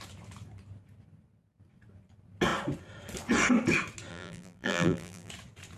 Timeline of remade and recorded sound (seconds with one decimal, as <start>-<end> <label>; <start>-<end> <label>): 0.0-4.1 recorded; 4.1-5.3 remade; 5.3-5.8 recorded